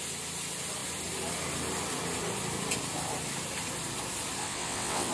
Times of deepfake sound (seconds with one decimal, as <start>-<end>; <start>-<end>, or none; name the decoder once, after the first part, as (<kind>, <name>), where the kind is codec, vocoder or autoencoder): 4.4-5.1 (vocoder, WaveNeXt)